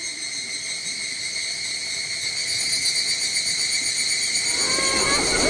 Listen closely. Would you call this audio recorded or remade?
recorded